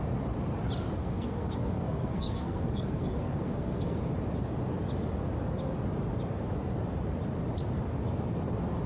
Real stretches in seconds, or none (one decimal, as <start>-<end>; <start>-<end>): 0.0-1.0; 4.0-8.9